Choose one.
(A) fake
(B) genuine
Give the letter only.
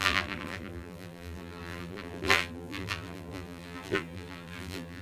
A